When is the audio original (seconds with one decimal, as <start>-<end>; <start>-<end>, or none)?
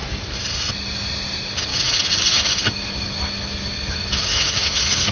0.0-1.7